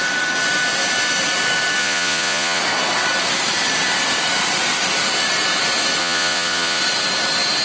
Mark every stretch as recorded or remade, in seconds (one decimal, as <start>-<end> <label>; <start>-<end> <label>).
0.0-1.8 recorded; 1.8-2.6 remade; 2.6-6.0 recorded; 6.0-6.8 remade; 6.8-7.6 recorded